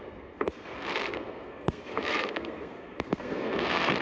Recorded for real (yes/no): no